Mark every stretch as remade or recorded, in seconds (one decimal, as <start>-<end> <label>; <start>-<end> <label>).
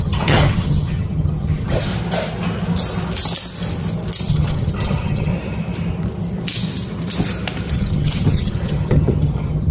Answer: 0.0-1.9 remade; 1.9-4.3 recorded; 4.3-5.3 remade; 5.3-7.7 recorded; 7.7-9.7 remade